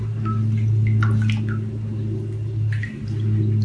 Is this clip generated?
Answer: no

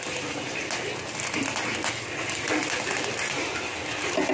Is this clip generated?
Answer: no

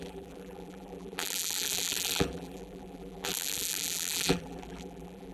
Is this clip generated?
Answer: yes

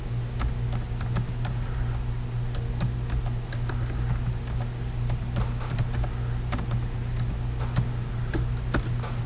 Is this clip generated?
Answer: no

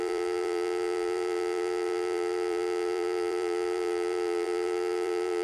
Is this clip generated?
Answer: yes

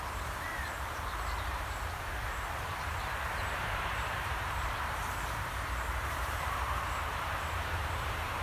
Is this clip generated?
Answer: yes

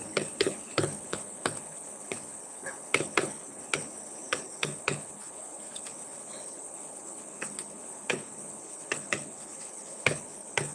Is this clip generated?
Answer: yes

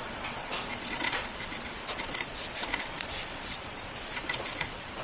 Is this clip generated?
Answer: yes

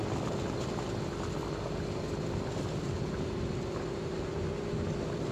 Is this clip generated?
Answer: no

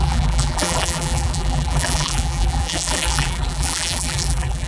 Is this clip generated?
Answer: yes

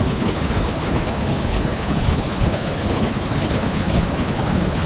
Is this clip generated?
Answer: yes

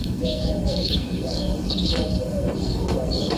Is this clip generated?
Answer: yes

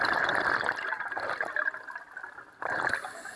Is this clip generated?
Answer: no